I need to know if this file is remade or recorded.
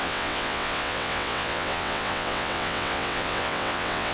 remade